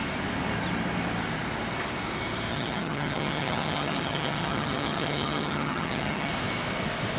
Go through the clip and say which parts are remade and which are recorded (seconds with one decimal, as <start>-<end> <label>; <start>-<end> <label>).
0.0-2.5 recorded; 2.5-6.3 remade; 6.3-7.2 recorded